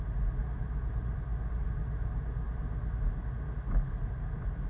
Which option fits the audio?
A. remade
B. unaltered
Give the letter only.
B